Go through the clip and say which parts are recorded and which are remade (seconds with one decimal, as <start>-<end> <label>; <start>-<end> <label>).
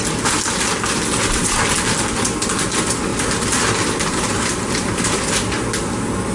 0.0-3.1 recorded; 3.1-5.2 remade; 5.2-6.3 recorded